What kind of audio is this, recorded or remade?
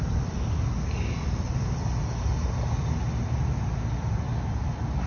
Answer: recorded